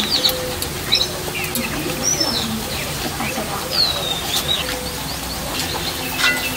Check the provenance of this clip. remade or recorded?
recorded